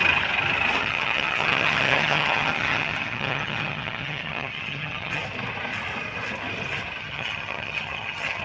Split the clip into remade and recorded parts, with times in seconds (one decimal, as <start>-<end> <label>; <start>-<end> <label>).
0.0-0.8 recorded; 0.8-5.2 remade; 5.2-7.0 recorded; 7.0-8.4 remade